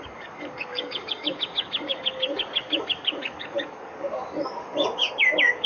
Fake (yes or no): yes